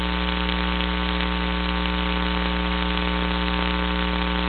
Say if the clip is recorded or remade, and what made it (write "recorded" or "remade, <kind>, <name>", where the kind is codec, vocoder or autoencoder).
recorded